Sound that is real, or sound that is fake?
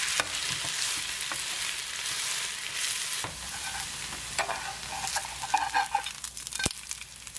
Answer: real